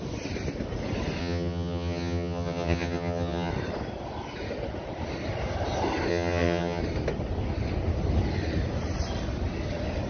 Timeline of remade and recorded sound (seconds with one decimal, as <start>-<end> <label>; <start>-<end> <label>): 0.0-1.2 recorded; 1.2-3.5 remade; 3.5-6.1 recorded; 6.1-6.8 remade; 6.8-10.1 recorded